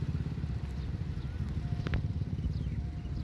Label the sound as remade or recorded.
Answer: recorded